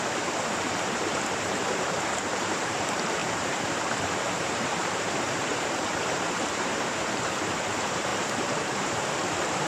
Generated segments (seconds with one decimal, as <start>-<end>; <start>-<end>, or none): 0.0-9.7